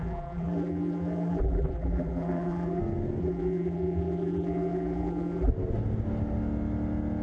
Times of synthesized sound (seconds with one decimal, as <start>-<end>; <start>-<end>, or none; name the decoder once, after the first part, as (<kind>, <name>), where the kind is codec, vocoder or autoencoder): 0.0-2.8 (vocoder, BigVGAN v2); 3.2-5.5